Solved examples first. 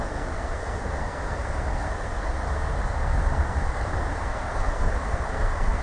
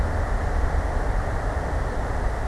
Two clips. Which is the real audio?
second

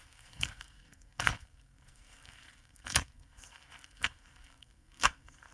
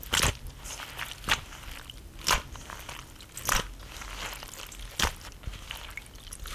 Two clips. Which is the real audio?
second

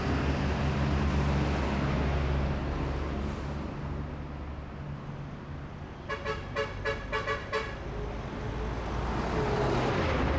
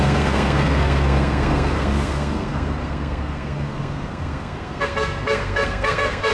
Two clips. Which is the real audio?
first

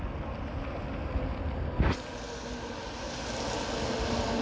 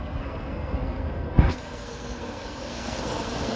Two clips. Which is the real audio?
first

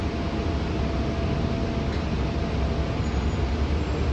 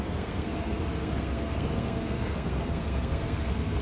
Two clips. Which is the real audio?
first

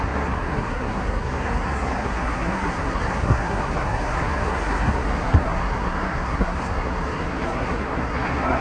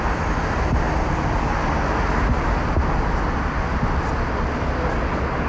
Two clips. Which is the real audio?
second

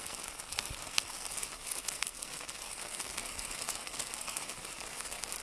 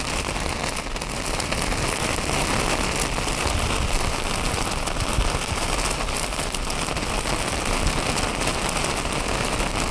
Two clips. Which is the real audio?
second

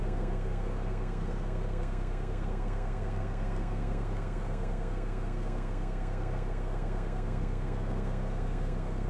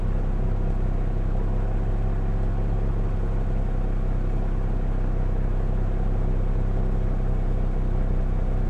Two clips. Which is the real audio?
second